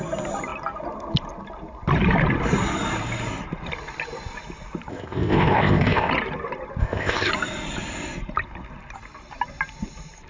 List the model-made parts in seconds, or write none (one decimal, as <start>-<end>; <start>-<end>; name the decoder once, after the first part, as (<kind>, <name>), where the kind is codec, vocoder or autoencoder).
4.9-6.1 (codec, ZipCodec); 6.8-7.3